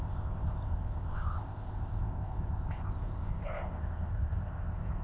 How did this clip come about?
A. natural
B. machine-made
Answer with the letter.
B